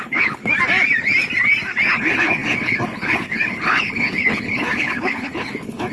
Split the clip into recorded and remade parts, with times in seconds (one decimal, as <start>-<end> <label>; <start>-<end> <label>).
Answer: 0.0-0.4 remade; 0.4-1.9 recorded; 1.9-5.9 remade